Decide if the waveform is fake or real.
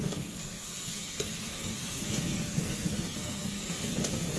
fake